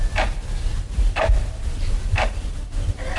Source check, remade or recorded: recorded